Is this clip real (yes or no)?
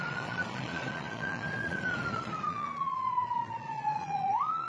no